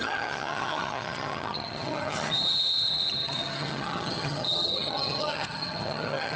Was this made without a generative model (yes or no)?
no